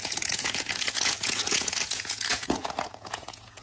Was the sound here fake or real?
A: fake